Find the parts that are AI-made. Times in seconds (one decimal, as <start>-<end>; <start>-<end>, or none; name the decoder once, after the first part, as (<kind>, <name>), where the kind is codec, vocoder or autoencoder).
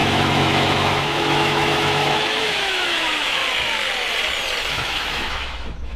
0.0-3.4 (autoencoder, DAC-VAE); 4.7-6.0